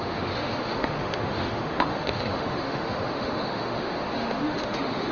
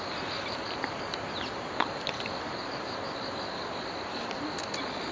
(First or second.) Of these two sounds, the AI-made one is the first